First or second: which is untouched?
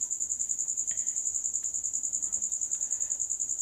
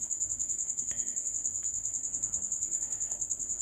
first